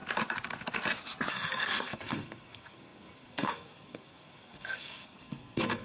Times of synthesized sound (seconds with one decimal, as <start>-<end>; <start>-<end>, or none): 1.3-5.8

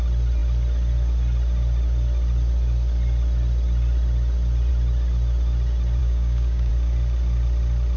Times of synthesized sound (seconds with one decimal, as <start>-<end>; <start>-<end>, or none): 6.0-6.7

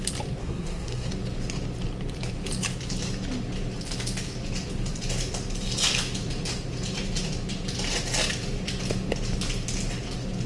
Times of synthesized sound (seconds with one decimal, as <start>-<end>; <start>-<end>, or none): 0.4-1.1

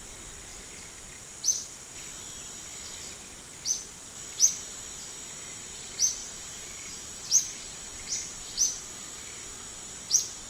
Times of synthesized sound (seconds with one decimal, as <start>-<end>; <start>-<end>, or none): 6.2-9.0

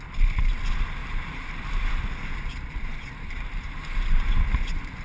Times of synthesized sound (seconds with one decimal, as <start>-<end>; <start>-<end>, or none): 1.0-2.0; 2.5-4.3

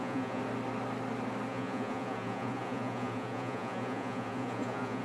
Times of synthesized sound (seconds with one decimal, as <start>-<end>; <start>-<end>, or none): 0.0-0.4; 1.5-5.0

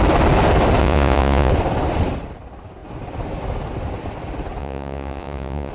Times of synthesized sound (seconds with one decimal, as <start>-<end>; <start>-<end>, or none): 0.8-1.5; 4.6-5.7

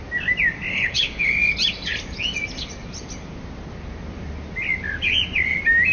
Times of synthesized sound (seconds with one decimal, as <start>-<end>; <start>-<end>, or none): 0.7-1.3